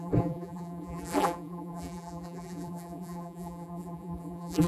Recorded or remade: remade